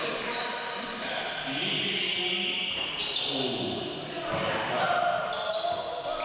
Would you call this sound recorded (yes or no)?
yes